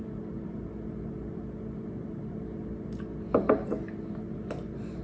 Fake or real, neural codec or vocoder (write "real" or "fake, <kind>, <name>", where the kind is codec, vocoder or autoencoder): real